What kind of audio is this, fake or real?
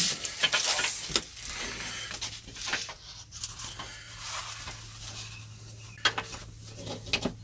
real